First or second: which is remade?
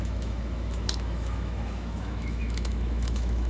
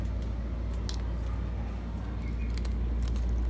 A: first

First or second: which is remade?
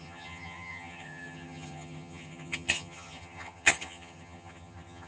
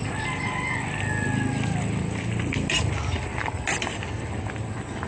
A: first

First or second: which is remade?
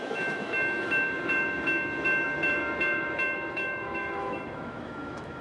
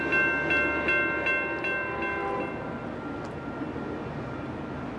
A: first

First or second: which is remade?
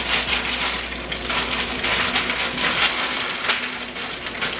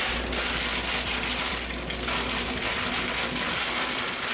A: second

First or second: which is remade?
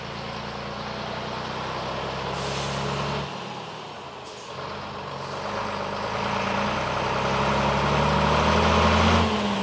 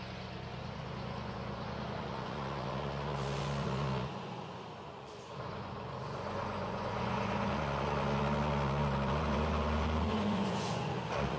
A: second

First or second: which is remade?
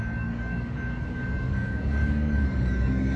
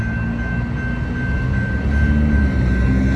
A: first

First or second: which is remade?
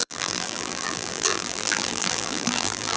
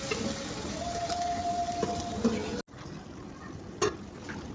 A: first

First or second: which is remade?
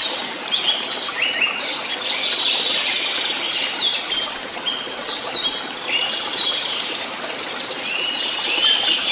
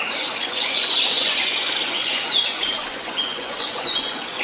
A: second